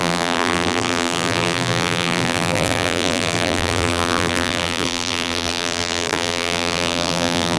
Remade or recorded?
remade